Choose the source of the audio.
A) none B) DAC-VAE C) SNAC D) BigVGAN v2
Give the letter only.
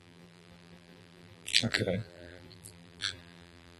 D